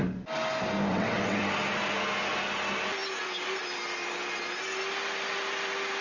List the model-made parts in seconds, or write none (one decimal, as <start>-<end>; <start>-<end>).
0.9-1.4